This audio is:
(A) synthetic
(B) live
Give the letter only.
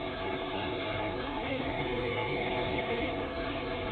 A